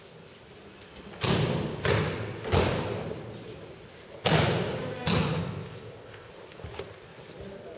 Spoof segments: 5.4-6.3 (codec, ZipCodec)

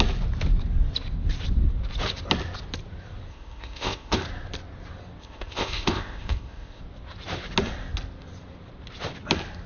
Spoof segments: 3.3-4.2 (codec, ZipCodec); 5.2-6.8

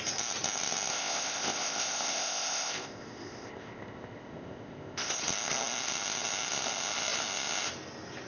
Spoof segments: 0.9-5.2 (codec, ZipCodec)

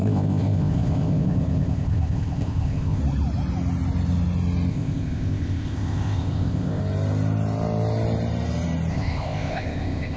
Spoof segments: 0.0-3.0 (codec, ZipCodec); 4.7-6.8; 8.9-10.2

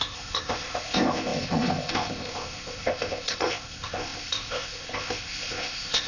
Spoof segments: 0.0-6.1 (codec, ZipCodec)

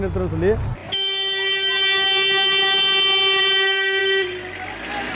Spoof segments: none

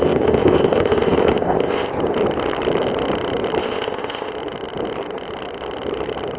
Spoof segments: 0.0-1.9 (codec, ZipCodec); 3.6-4.3